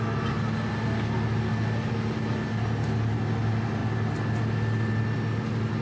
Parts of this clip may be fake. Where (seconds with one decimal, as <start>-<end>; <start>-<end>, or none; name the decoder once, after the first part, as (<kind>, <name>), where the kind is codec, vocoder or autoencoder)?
none